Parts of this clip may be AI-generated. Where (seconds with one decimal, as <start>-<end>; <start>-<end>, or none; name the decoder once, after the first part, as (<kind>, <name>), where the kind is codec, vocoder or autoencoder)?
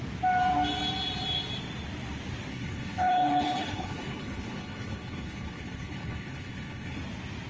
2.5-7.0 (codec, HILCodec)